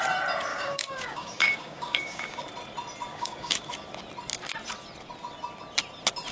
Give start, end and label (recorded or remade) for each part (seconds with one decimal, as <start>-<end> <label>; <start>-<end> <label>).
0.0-0.5 recorded; 0.5-2.4 remade; 2.4-3.1 recorded; 3.1-3.6 remade; 3.6-6.3 recorded